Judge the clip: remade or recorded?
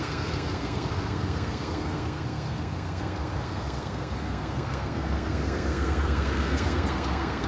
remade